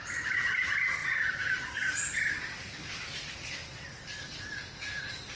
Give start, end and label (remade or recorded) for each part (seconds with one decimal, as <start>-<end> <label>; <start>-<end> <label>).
0.0-1.0 recorded; 1.0-4.2 remade; 4.2-5.4 recorded